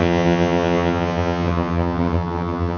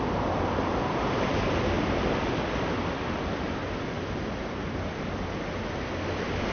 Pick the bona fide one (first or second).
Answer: second